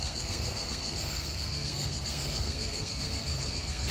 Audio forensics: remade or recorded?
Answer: remade